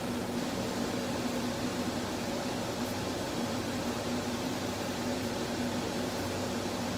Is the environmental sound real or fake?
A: real